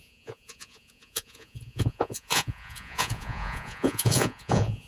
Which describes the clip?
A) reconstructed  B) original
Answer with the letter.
A